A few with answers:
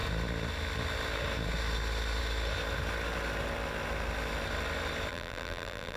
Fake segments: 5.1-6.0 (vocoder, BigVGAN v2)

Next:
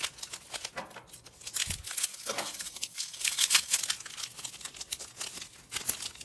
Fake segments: 2.1-3.8 (codec, SNAC)

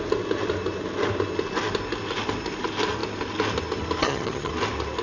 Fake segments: 4.0-4.5 (vocoder, HiFi-GAN)

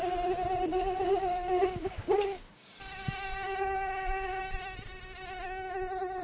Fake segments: 0.7-4.4 (codec, DAC)

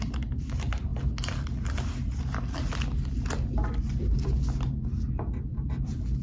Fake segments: none

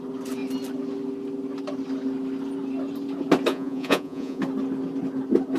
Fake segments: 3.5-4.4 (vocoder, Vocos)

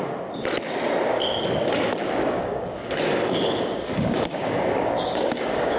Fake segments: 1.1-1.7 (codec, DAC); 2.2-5.8